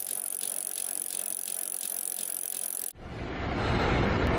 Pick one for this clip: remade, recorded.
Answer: recorded